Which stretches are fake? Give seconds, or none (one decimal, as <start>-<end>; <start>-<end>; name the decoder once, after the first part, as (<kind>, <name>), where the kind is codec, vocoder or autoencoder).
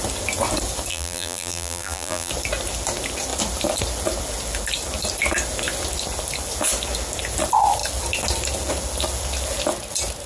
0.9-2.3 (vocoder, BigVGAN v2)